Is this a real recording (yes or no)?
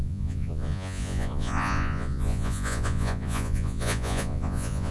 no